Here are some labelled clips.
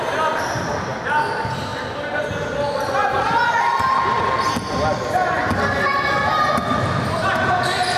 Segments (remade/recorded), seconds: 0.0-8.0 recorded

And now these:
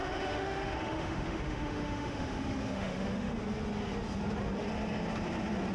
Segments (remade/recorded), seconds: 0.0-3.4 remade; 3.4-5.7 recorded

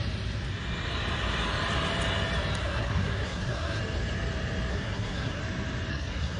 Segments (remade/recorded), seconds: 0.0-2.6 recorded; 2.6-3.8 remade; 3.8-4.7 recorded; 4.7-5.4 remade; 5.4-5.9 recorded; 5.9-6.4 remade